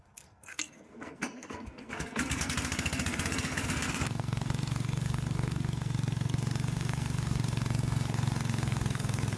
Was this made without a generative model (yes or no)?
no